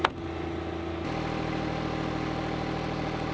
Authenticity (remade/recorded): recorded